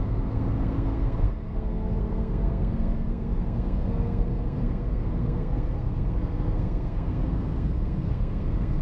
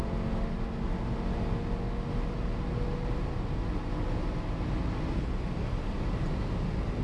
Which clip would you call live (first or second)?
second